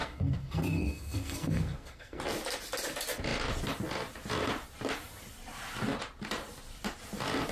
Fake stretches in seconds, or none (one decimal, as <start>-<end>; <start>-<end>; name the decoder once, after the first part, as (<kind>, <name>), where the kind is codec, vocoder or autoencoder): 0.0-2.2 (codec, SNAC)